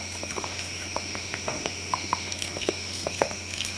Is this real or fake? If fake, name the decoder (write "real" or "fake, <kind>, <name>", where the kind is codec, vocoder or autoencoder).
fake, autoencoder, DAC-VAE